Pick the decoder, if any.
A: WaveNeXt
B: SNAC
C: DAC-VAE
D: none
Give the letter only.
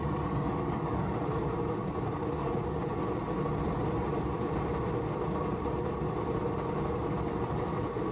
D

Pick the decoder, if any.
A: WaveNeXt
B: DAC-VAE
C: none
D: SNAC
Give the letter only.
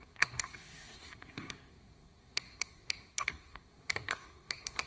D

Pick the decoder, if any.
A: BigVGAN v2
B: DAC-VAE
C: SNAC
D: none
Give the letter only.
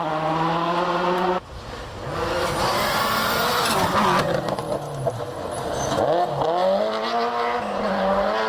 D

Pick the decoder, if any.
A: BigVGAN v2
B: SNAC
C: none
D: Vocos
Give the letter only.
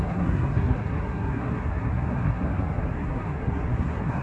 B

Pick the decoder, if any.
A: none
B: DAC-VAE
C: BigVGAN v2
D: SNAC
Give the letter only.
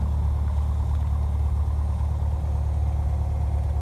A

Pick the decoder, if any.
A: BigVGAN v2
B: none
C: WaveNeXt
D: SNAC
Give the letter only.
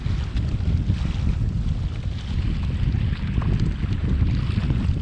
B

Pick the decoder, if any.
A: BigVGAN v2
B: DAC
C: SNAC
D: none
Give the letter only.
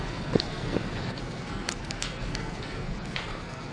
C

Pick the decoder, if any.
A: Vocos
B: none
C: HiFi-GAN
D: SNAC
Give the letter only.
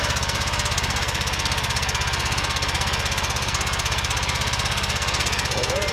D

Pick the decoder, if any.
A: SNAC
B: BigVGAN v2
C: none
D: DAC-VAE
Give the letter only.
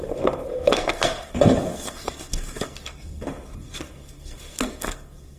A